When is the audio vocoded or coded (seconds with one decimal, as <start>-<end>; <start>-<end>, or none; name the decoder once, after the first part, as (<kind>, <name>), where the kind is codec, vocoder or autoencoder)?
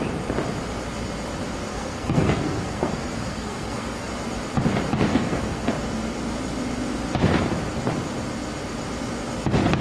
1.7-4.1 (codec, SNAC); 5.1-5.7